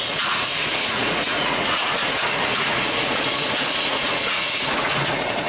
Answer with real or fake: fake